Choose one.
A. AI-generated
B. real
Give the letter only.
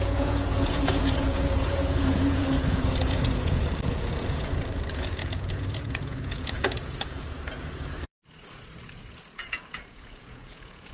A